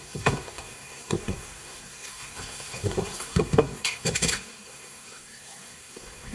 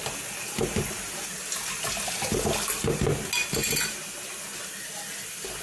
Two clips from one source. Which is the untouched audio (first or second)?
second